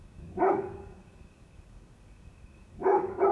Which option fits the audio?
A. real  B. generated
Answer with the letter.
B